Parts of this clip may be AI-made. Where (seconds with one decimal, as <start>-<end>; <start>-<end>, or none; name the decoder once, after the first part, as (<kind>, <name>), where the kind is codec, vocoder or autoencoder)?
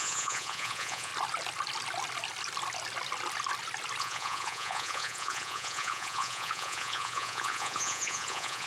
0.0-1.1 (vocoder, Vocos); 4.0-8.7